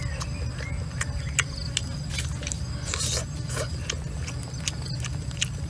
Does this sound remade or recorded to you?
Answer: recorded